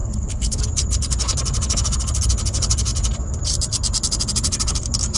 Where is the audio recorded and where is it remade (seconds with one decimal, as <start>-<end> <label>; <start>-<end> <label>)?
0.0-0.6 remade; 0.6-5.2 recorded